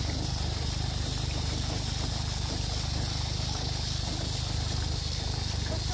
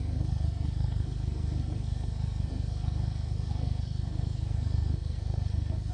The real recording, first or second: first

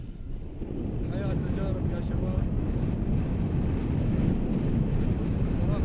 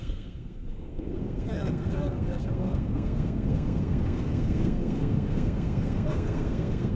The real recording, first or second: first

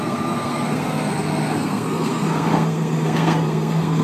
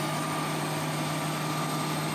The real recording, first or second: second